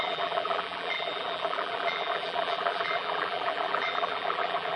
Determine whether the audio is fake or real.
fake